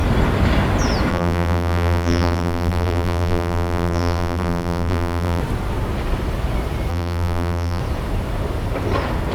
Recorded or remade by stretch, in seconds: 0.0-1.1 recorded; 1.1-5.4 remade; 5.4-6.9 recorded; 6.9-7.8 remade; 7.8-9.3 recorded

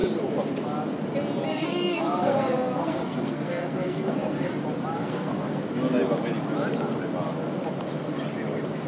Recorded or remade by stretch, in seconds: 0.0-1.5 recorded; 1.5-4.5 remade; 4.5-5.0 recorded; 5.0-5.6 remade; 5.6-8.9 recorded